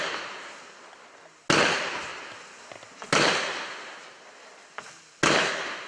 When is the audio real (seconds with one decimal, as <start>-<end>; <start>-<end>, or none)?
0.0-5.9